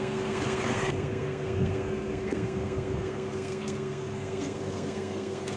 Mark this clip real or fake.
fake